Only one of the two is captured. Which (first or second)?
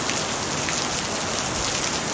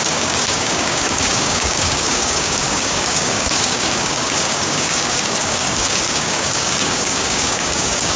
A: first